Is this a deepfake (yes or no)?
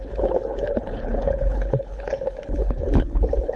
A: yes